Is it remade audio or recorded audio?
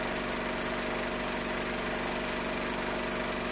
recorded